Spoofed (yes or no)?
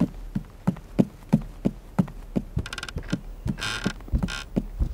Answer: no